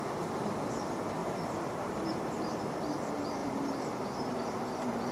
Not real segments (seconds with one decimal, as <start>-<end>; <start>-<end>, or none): 1.2-2.6; 3.4-4.6